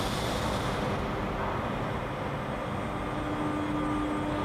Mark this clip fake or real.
real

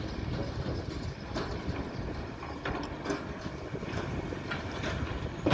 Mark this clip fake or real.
real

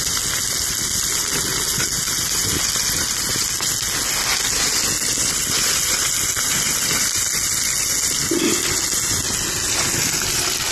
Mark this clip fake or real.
real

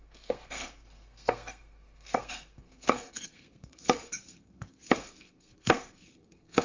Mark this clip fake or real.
fake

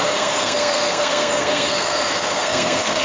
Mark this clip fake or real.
fake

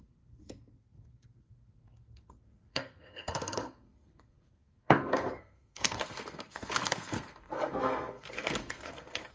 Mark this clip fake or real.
fake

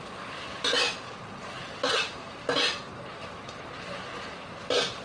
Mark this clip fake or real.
real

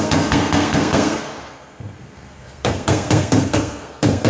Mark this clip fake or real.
fake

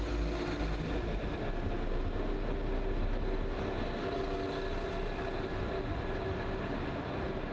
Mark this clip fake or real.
real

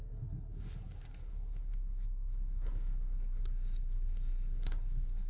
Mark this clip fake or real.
fake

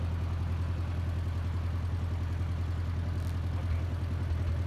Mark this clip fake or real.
real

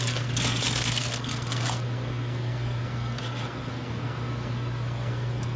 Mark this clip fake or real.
fake